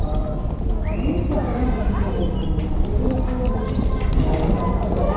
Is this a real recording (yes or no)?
yes